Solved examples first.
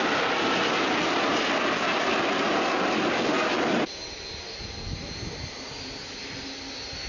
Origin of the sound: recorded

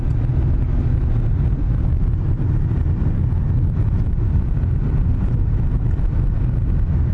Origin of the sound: recorded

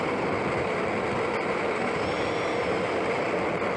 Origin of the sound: recorded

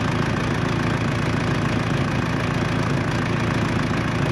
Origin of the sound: recorded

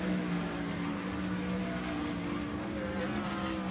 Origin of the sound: recorded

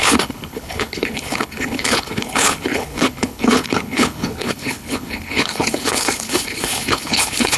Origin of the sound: remade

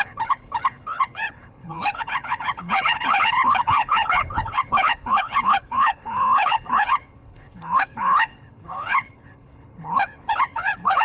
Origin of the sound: remade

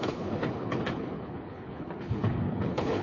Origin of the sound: remade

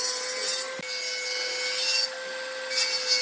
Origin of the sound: recorded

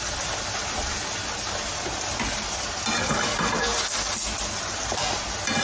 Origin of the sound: recorded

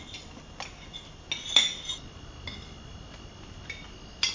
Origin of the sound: recorded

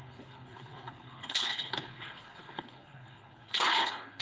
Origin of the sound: remade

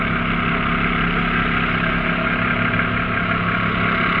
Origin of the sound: recorded